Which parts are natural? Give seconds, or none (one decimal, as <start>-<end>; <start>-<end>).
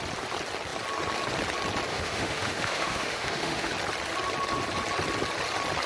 0.0-1.9; 3.7-5.9